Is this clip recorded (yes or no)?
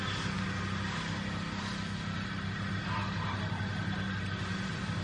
yes